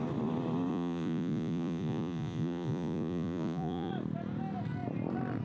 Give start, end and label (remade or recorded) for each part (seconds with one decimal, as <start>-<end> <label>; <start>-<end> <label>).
0.0-0.7 recorded; 0.7-3.9 remade; 3.9-5.4 recorded